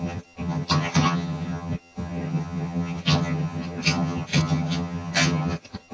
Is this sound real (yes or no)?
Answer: no